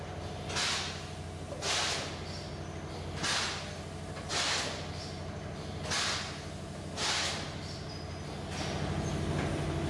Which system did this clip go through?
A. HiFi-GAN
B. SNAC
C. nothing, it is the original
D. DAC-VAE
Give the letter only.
C